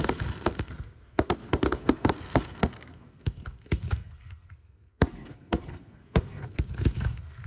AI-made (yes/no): yes